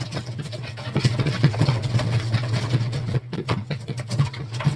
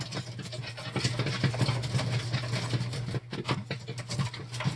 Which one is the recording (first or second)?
second